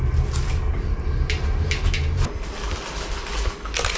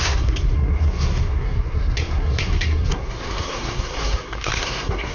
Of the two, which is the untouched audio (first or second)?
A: first